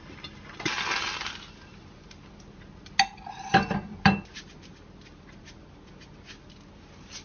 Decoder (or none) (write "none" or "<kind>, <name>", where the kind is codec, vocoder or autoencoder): none